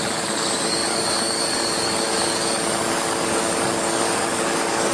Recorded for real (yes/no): no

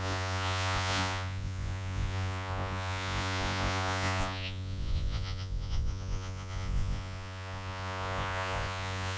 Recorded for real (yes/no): no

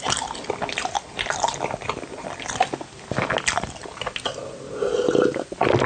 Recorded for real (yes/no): yes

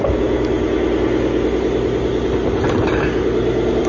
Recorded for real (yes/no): yes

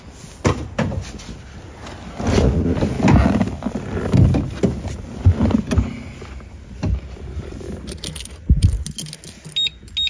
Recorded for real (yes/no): yes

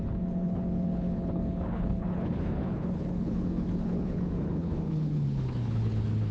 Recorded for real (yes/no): no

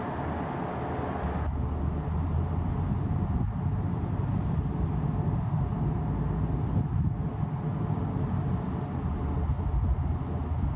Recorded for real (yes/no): yes